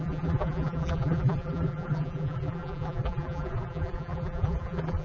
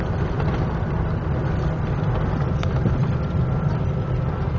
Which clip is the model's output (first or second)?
first